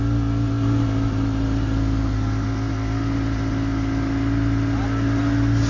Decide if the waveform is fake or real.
real